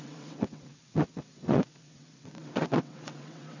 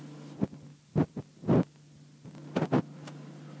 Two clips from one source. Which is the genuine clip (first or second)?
second